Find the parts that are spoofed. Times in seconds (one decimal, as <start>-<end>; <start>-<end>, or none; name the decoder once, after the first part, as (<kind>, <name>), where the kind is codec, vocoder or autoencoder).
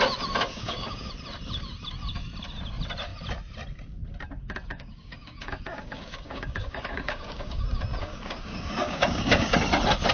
0.5-1.1 (codec, DAC); 4.7-7.6; 8.0-9.5